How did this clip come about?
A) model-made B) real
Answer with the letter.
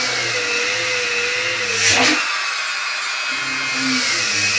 B